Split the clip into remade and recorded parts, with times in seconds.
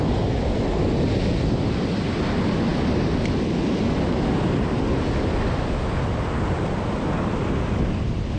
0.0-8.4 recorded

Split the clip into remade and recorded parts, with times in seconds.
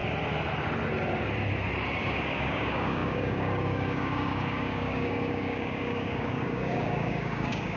0.0-2.0 recorded; 2.0-7.8 remade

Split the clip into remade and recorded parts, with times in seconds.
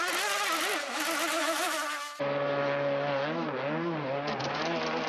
0.0-1.4 recorded; 1.4-2.2 remade; 2.2-5.1 recorded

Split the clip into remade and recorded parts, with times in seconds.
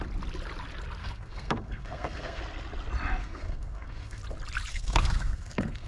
0.0-1.0 recorded; 1.0-2.4 remade; 2.4-3.2 recorded; 3.2-4.2 remade; 4.2-4.7 recorded; 4.7-5.9 remade